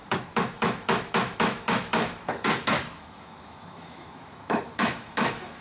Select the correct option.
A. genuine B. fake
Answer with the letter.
B